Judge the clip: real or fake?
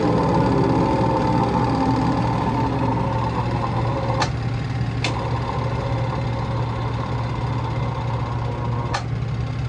real